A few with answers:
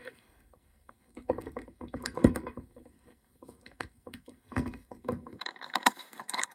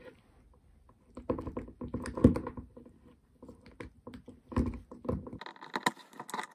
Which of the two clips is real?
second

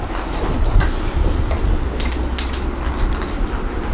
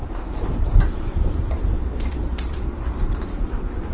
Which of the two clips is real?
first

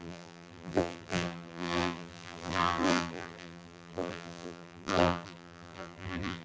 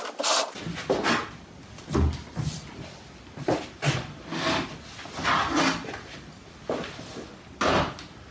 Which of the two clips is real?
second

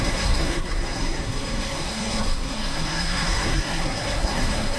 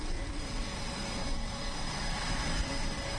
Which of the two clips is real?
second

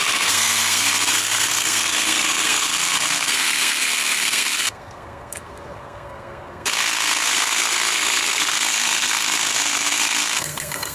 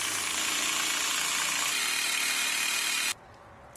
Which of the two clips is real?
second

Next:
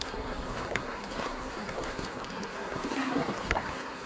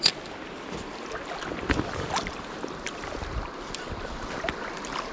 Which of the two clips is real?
second